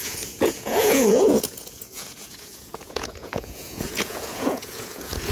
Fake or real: fake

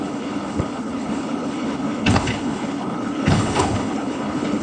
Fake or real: fake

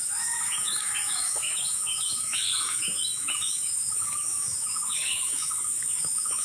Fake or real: fake